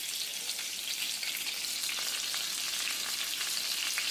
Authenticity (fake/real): real